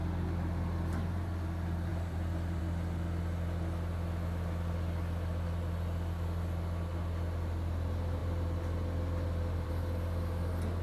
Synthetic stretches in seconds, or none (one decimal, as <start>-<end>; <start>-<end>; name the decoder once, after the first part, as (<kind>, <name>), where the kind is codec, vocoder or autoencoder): 1.9-2.6 (vocoder, BigVGAN v2); 8.2-9.7